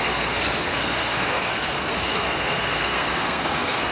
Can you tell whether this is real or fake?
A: fake